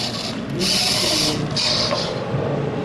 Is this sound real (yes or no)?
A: yes